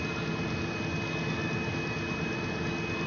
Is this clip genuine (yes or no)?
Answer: yes